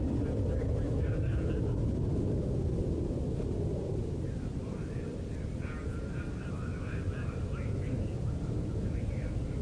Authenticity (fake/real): real